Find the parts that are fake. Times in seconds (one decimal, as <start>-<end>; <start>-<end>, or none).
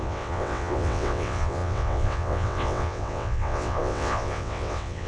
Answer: 0.0-5.1